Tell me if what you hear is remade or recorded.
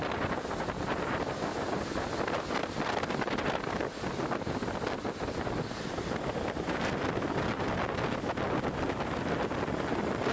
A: recorded